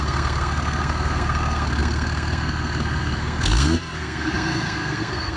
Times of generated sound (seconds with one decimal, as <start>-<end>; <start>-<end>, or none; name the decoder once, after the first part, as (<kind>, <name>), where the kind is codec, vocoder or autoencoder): 0.0-5.4 (codec, SNAC)